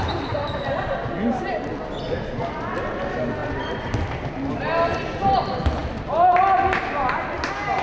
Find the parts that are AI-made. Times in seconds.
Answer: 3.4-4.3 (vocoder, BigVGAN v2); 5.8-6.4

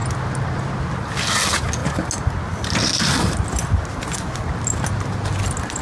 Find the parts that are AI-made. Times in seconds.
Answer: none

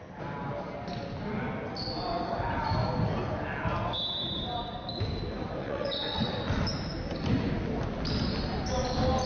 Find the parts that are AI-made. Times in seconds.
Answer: 5.6-6.3 (vocoder, WaveNeXt)

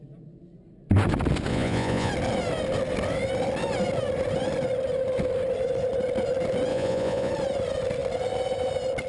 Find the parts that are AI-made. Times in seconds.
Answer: 1.5-2.1 (vocoder, Vocos); 6.7-7.3